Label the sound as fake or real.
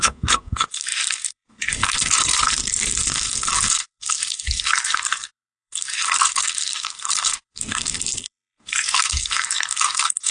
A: fake